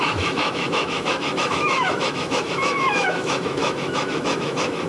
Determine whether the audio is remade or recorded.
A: remade